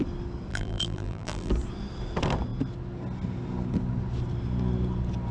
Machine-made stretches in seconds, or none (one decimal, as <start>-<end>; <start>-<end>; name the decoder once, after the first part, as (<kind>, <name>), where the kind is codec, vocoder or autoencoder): 0.5-1.5 (vocoder, BigVGAN v2)